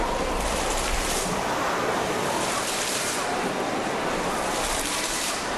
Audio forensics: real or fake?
fake